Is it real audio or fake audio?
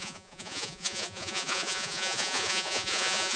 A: fake